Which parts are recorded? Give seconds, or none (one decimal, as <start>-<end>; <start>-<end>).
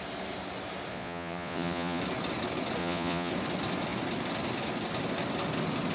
0.0-0.9; 2.0-2.8; 3.3-5.9